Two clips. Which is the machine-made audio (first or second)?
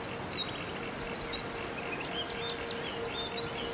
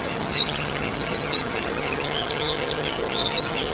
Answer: second